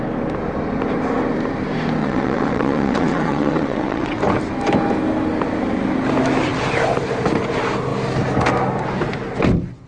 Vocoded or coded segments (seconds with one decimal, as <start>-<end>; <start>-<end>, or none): 2.0-4.2